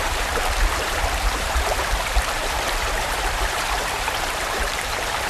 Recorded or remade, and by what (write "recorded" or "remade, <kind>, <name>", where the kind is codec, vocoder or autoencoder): remade, vocoder, BigVGAN v2